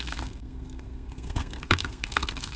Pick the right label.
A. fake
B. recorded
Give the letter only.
A